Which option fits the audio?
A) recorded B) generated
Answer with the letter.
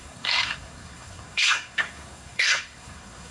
B